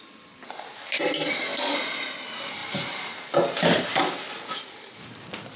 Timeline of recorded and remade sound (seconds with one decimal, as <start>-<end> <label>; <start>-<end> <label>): 0.0-1.5 recorded; 1.5-2.1 remade; 2.1-2.6 recorded; 2.6-4.0 remade; 4.0-5.6 recorded